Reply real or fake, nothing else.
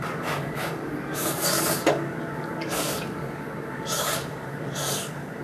fake